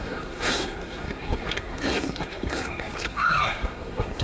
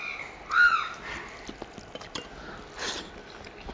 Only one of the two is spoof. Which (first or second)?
first